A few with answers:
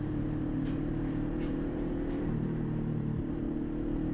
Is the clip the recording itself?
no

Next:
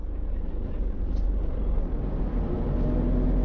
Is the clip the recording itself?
yes